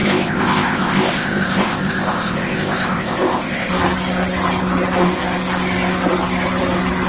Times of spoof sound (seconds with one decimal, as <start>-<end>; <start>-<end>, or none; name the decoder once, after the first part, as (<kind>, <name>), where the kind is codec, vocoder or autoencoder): 0.0-3.7 (codec, ZipCodec)